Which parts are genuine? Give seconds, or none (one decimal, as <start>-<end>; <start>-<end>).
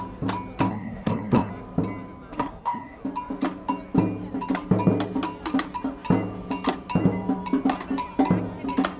0.0-0.7; 1.5-2.3; 3.0-9.0